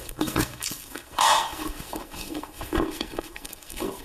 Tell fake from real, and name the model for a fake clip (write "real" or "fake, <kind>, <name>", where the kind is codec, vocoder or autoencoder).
fake, codec, SNAC